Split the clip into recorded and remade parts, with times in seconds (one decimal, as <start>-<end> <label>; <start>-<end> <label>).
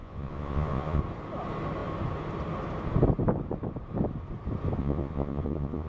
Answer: 0.0-1.0 remade; 1.0-4.8 recorded; 4.8-5.9 remade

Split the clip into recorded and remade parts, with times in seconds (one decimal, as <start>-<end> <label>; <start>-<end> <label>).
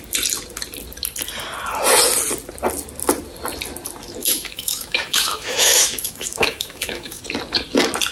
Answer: 0.0-4.2 recorded; 4.2-7.2 remade; 7.2-8.1 recorded